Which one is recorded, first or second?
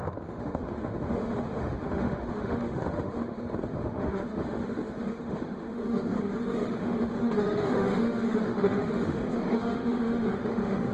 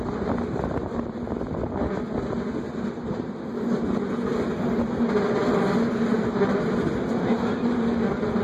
second